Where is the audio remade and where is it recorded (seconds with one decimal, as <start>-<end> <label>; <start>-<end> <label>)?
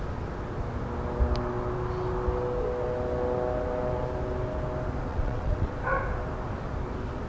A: 0.0-5.1 recorded; 5.1-5.7 remade; 5.7-7.3 recorded